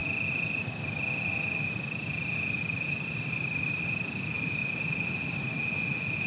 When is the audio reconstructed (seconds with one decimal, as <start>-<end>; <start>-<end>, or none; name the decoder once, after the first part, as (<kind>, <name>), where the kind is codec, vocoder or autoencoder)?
none